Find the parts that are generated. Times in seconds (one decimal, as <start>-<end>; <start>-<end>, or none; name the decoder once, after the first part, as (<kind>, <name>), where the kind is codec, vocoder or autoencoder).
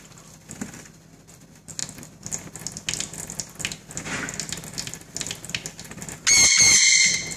none